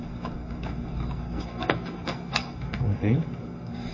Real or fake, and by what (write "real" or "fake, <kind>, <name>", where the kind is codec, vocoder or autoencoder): fake, codec, SNAC